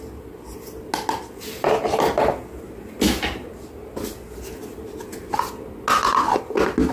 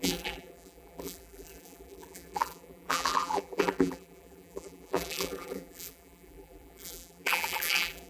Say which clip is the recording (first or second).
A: first